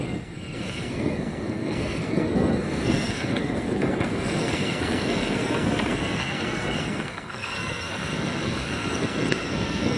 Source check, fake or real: fake